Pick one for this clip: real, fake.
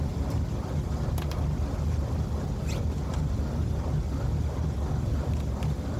real